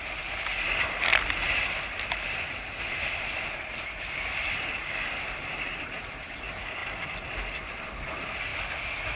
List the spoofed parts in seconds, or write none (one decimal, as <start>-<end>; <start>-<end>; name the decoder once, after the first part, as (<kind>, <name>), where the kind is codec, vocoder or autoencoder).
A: 1.1-5.7 (vocoder, BigVGAN v2)